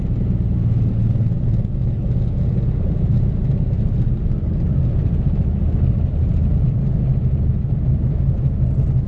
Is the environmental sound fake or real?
real